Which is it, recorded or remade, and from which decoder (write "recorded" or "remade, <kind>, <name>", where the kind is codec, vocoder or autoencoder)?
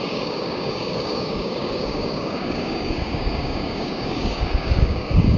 remade, codec, DAC